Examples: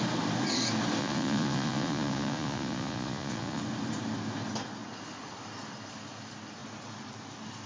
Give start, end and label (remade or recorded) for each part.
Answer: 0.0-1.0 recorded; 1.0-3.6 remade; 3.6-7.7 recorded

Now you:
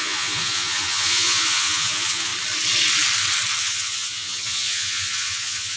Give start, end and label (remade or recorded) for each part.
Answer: 0.0-2.3 remade; 2.3-3.6 recorded; 3.6-5.8 remade

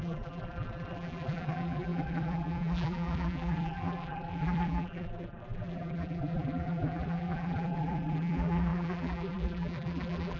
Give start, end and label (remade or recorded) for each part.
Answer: 0.0-10.4 remade

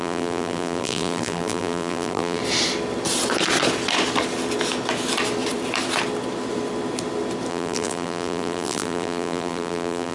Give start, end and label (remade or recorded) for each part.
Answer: 0.0-2.4 remade; 2.4-7.5 recorded; 7.5-10.1 remade

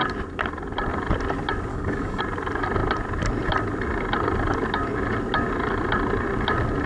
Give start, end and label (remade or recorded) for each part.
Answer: 0.0-1.7 recorded; 1.7-2.2 remade; 2.2-6.9 recorded

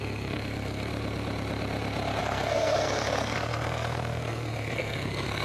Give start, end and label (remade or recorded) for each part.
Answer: 0.0-0.9 remade; 0.9-2.2 recorded; 2.2-5.4 remade

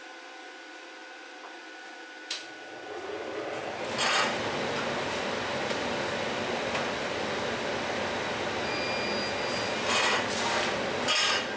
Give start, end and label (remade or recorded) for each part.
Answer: 0.0-11.6 recorded